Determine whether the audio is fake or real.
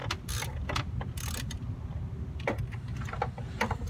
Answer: real